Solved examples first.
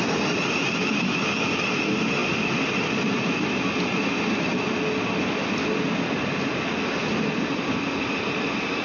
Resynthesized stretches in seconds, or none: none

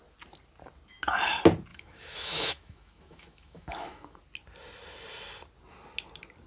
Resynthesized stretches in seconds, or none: 1.7-4.2 (autoencoder, DAC-VAE)

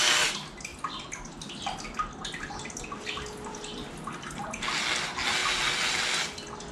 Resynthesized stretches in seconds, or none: none

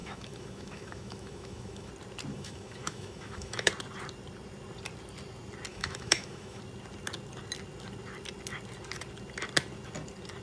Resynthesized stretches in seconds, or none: 0.0-1.9 (autoencoder, DAC-VAE); 2.3-3.7; 5.7-6.6